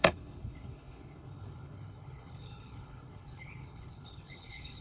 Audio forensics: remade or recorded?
remade